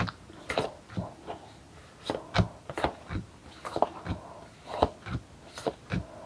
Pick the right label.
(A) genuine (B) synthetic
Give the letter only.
A